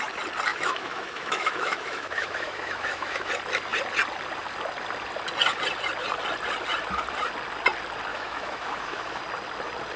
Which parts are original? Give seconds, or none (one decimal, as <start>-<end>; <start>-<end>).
0.0-0.5; 3.3-8.1; 9.2-10.0